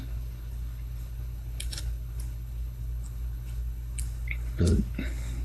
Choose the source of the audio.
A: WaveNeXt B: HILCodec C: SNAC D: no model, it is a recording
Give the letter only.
B